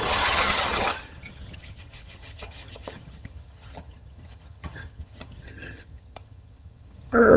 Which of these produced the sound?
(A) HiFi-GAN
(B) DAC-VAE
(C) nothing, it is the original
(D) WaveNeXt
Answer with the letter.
A